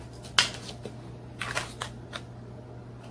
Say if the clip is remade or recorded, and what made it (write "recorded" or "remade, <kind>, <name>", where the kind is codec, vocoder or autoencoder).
recorded